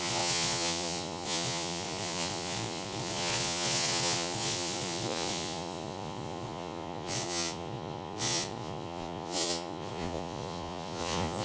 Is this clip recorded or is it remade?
remade